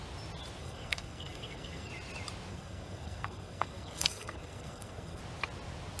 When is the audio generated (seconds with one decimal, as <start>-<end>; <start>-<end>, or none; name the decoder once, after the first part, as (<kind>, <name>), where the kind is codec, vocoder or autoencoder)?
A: 0.6-1.9 (codec, SNAC); 2.5-5.2